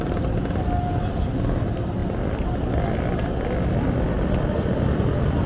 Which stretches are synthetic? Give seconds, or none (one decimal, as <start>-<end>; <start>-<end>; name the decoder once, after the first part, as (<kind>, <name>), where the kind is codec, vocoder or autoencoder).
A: none